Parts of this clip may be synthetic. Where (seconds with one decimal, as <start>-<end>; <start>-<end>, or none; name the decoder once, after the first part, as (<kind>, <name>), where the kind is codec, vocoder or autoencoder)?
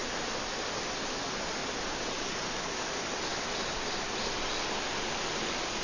none